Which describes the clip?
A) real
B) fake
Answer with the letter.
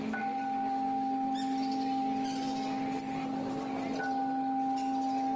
A